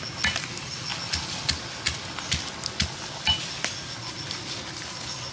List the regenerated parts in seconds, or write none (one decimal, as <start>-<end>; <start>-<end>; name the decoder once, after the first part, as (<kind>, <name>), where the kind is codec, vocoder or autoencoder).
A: none